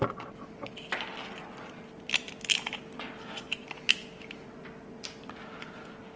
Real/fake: real